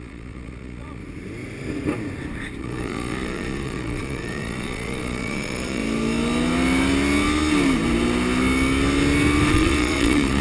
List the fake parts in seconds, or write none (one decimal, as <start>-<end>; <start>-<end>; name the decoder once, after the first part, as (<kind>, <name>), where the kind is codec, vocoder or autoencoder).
0.0-1.0 (vocoder, Vocos); 2.6-5.8; 9.5-10.4